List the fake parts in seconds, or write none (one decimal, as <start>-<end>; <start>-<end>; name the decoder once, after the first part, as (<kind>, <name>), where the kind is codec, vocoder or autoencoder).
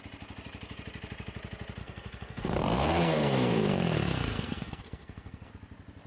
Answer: 1.8-5.5 (codec, SNAC)